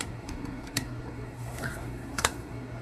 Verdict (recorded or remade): remade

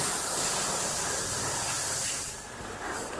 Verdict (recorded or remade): remade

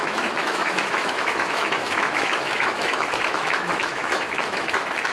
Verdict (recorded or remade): remade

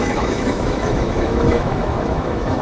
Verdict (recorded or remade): remade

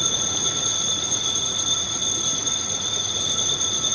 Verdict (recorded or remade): remade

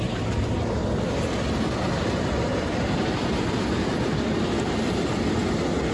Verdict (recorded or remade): recorded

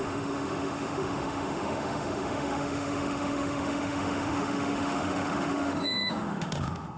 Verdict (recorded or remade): remade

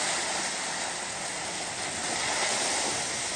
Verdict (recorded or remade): recorded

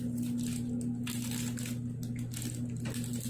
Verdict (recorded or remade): recorded